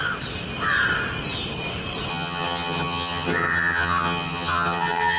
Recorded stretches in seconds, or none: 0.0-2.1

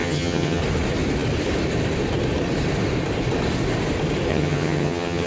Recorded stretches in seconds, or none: 0.6-4.3